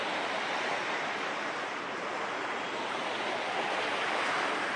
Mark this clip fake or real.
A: real